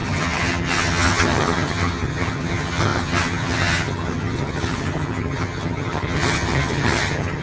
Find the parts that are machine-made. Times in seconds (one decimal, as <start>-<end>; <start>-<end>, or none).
0.0-7.4